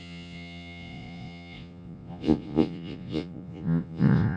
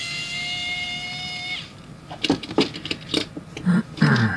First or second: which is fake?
first